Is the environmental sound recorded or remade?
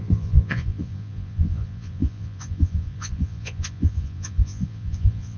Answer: remade